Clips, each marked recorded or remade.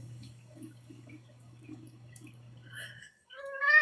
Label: remade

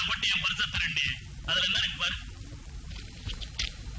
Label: recorded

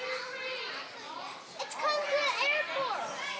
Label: recorded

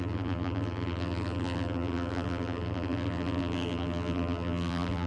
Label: remade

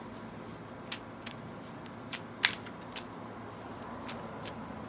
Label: recorded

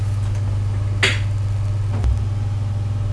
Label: recorded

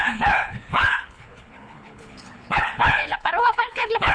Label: remade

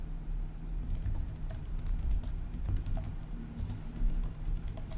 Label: remade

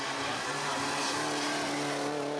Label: recorded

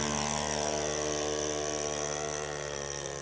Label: recorded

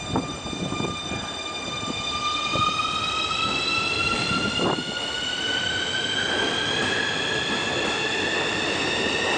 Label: remade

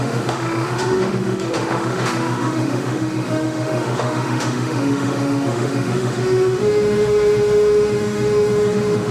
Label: remade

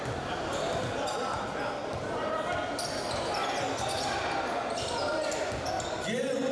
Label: recorded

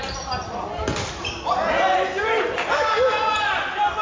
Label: recorded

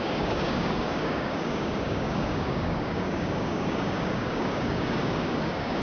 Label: remade